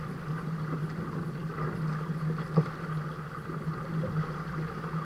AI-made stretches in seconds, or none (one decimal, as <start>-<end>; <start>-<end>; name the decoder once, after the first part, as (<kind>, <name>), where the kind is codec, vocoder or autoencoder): none